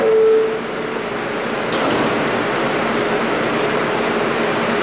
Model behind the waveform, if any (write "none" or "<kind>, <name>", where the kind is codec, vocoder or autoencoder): none